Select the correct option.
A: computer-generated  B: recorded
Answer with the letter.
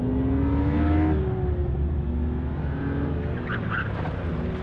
B